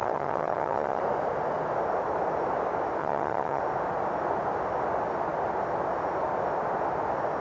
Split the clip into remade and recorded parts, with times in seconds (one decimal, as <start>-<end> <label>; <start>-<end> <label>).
0.0-1.0 remade; 1.0-3.0 recorded; 3.0-3.6 remade; 3.6-7.4 recorded